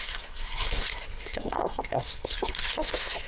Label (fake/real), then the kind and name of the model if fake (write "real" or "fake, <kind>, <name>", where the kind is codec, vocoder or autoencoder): fake, codec, SNAC